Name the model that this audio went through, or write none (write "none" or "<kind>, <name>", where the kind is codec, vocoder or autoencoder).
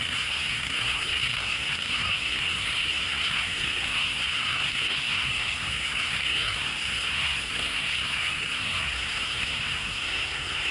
codec, SNAC